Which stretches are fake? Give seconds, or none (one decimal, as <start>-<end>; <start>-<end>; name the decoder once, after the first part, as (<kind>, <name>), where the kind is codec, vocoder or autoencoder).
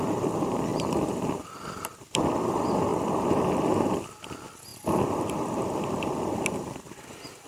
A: 0.7-2.2 (vocoder, BigVGAN v2); 2.9-4.2; 4.7-6.9